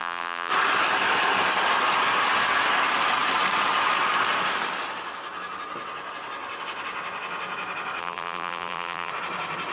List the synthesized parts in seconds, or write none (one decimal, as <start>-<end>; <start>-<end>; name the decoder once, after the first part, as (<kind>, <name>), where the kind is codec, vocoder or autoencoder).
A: 0.0-0.5 (vocoder, BigVGAN v2); 8.0-9.1